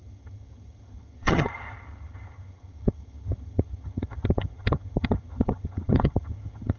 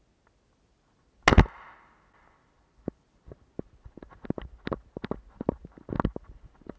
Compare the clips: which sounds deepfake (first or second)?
first